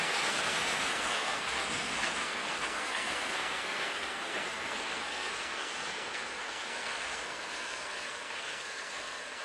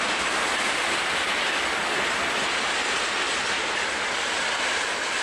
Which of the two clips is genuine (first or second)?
second